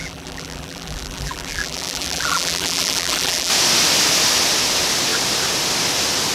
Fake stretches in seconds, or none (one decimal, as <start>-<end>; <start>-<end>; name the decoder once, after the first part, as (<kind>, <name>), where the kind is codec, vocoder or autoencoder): 0.0-3.5 (vocoder, BigVGAN v2)